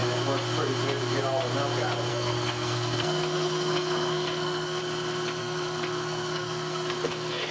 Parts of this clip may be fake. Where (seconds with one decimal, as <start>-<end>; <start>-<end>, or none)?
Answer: 2.1-4.8; 5.4-7.5